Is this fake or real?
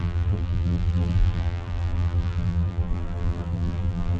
fake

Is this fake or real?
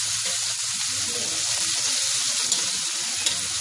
real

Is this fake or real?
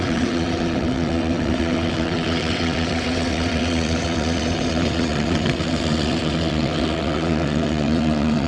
fake